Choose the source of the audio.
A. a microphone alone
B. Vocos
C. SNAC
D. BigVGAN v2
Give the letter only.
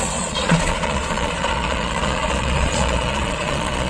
B